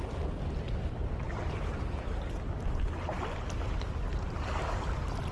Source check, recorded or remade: recorded